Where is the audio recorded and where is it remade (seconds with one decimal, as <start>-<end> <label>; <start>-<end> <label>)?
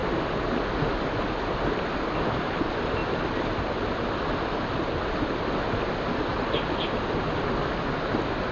0.0-8.5 recorded